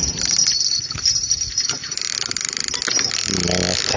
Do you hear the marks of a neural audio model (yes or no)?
no